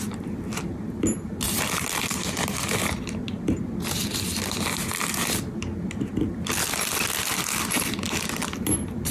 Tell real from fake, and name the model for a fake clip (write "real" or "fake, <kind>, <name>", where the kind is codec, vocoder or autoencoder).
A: real